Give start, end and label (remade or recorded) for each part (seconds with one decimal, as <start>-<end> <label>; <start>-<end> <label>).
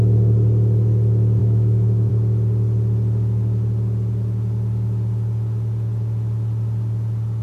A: 0.0-1.4 recorded; 1.4-2.1 remade; 2.1-7.4 recorded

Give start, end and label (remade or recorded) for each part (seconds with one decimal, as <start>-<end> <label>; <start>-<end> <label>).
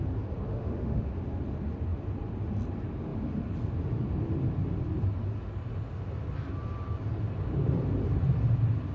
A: 0.0-0.5 recorded; 0.5-1.1 remade; 1.1-8.9 recorded